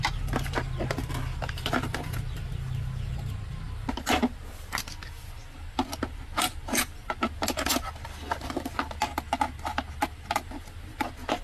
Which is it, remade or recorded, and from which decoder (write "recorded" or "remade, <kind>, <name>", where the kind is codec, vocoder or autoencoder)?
recorded